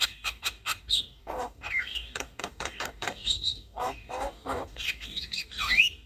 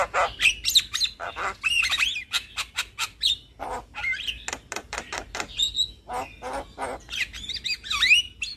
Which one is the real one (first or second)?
second